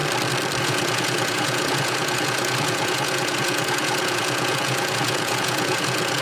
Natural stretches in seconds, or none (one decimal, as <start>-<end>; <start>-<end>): 0.0-0.6